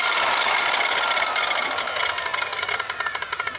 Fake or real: real